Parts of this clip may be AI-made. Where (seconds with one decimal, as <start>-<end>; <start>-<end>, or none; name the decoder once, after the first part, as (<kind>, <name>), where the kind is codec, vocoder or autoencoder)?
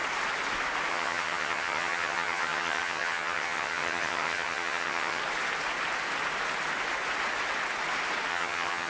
0.9-5.2 (vocoder, HiFi-GAN); 8.3-8.9